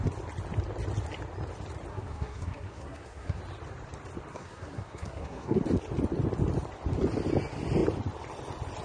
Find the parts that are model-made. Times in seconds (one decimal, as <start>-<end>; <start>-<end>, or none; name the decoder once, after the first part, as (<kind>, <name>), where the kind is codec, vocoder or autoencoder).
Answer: 1.9-3.4 (codec, SNAC); 4.3-5.6